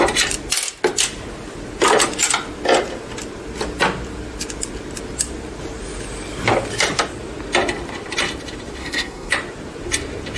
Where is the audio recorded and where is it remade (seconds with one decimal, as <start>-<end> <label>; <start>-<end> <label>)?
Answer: 0.0-8.8 recorded; 8.8-9.3 remade; 9.3-10.4 recorded